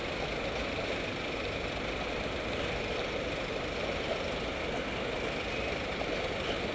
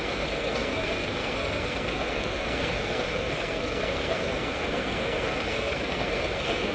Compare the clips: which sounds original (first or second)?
first